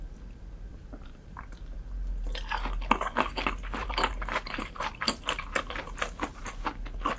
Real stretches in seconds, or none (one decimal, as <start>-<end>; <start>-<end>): 0.0-0.7; 1.4-3.8; 4.9-7.2